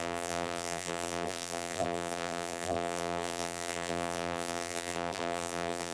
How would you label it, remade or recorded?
remade